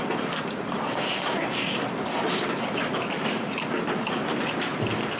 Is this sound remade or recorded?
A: recorded